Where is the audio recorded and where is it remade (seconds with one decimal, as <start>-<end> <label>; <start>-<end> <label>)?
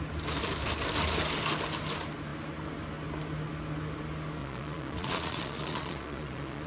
0.0-4.4 recorded; 4.4-6.7 remade